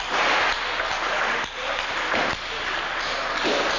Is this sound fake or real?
real